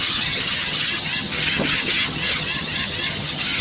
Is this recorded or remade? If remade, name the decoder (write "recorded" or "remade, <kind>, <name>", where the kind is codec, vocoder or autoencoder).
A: remade, vocoder, HiFi-GAN